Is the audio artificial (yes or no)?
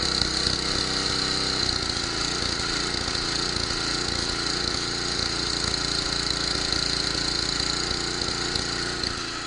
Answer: no